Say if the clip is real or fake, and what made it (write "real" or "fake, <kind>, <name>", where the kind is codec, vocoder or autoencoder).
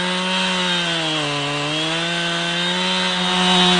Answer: real